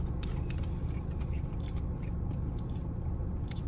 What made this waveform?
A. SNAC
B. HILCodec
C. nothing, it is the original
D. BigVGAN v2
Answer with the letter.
D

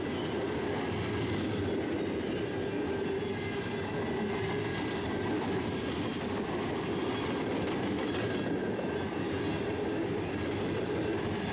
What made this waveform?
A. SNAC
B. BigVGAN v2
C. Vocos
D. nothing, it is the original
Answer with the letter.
D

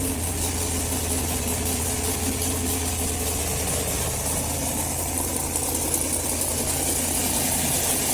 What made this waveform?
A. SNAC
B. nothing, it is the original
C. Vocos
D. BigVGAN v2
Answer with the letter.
B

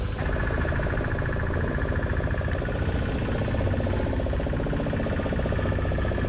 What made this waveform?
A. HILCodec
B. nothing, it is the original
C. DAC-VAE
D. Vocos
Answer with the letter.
B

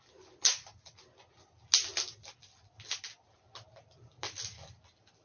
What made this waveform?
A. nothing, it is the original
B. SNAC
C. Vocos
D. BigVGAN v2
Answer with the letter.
A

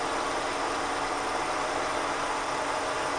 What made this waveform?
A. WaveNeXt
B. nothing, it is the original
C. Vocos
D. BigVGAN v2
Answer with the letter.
B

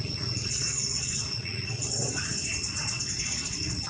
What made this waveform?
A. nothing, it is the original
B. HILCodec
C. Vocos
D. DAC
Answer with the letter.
C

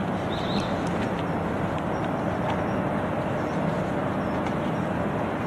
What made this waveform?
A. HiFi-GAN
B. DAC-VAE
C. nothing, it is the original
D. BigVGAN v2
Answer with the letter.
D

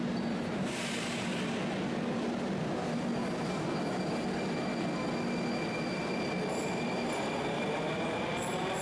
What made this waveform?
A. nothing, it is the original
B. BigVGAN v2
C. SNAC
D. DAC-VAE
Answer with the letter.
A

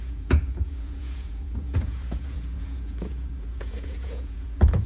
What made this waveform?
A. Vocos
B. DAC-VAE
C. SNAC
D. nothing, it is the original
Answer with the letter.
A